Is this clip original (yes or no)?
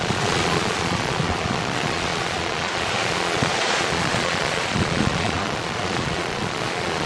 no